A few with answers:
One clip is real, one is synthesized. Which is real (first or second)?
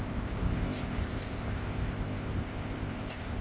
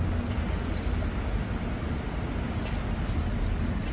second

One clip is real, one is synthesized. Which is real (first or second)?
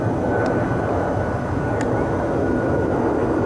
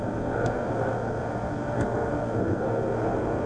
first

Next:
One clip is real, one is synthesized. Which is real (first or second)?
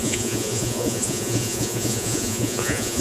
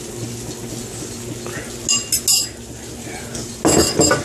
second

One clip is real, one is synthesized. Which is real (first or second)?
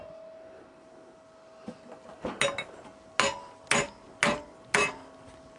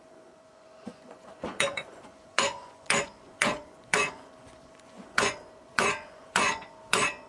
first